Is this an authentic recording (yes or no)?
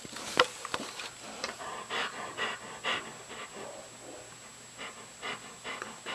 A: yes